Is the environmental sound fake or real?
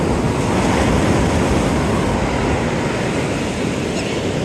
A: real